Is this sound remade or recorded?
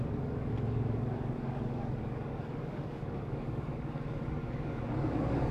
remade